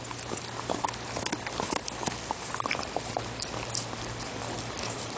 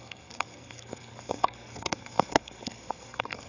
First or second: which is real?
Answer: first